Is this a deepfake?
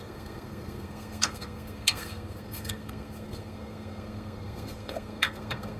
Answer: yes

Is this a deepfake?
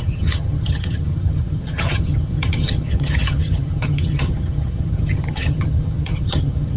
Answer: yes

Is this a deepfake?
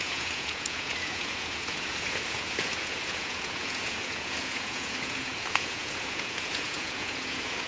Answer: yes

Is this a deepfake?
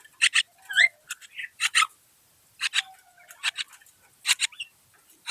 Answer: no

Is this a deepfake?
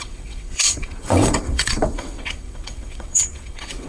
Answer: yes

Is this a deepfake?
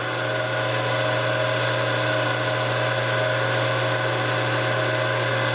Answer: no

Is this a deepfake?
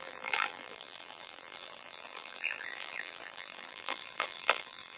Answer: yes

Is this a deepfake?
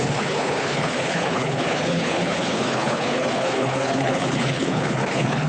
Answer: yes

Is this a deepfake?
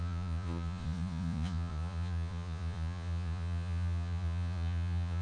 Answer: yes